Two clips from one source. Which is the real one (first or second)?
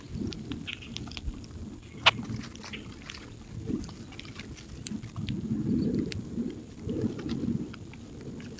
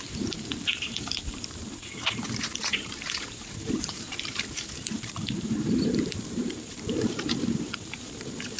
first